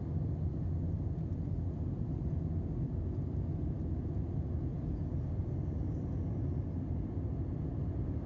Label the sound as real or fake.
real